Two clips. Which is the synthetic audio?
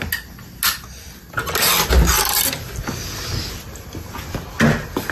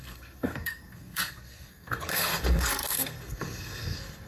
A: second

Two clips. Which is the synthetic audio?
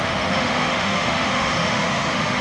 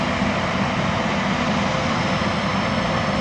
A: first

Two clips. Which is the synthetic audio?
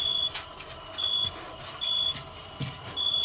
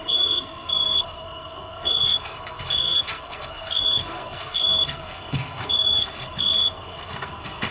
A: second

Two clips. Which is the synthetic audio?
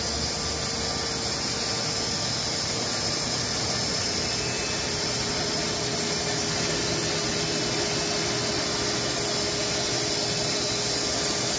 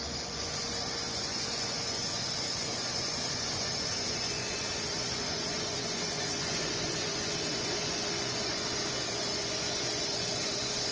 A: second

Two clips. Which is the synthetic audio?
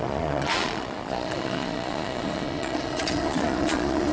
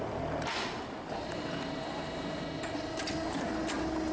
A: first